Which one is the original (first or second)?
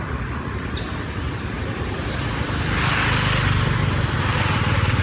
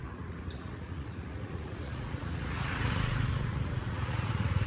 first